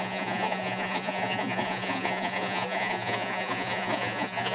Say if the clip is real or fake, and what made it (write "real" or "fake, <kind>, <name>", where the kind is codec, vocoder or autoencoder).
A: fake, vocoder, Vocos